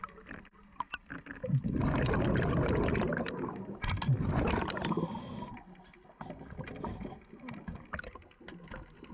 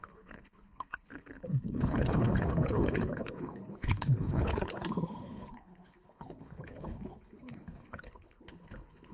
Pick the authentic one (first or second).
first